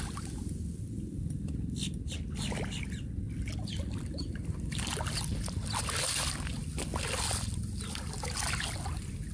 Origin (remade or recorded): recorded